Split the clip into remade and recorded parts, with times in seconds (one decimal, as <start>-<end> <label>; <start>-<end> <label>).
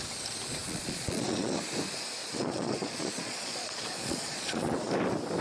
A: 0.0-0.6 recorded; 0.6-1.6 remade; 1.6-2.2 recorded; 2.2-4.9 remade; 4.9-5.4 recorded